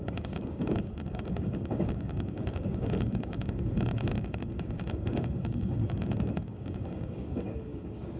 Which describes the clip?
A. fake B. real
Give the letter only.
A